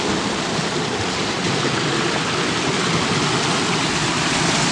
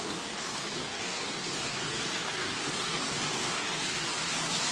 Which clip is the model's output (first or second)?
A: second